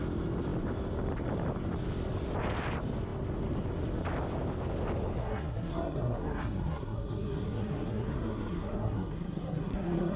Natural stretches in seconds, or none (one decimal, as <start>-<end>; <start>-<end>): 0.0-5.2

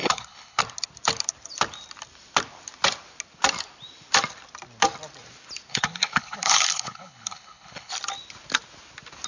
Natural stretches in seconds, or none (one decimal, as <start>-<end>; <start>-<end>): 0.6-5.7; 7.9-9.3

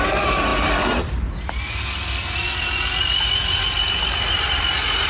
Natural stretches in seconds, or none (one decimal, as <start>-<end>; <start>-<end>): 0.0-5.1

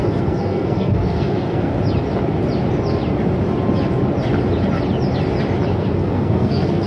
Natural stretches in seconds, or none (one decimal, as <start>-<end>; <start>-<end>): 1.7-5.8